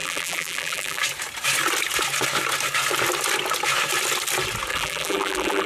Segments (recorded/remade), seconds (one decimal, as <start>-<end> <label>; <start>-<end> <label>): 0.0-1.0 remade; 1.0-4.7 recorded; 4.7-5.7 remade